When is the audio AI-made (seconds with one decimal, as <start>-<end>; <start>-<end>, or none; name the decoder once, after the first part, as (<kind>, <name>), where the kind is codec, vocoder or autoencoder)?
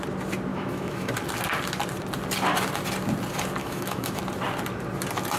0.5-1.1 (autoencoder, DAC-VAE); 3.6-4.2